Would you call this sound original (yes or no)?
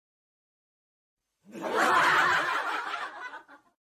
yes